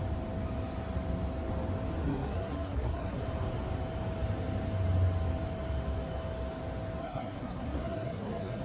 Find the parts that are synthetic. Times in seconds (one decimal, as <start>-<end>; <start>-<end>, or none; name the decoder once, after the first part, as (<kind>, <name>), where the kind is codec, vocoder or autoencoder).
2.0-3.2 (codec, SNAC); 7.0-8.6